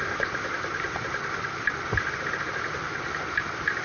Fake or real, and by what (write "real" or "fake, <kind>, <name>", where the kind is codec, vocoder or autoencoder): real